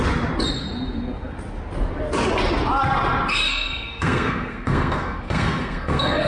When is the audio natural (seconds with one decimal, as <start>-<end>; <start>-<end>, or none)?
0.0-3.3